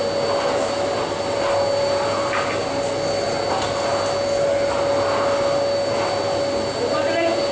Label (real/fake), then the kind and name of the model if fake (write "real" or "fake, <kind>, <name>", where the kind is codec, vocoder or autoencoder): real